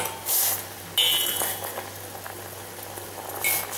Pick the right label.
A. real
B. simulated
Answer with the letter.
A